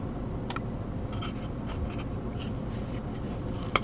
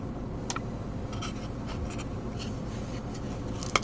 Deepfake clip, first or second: first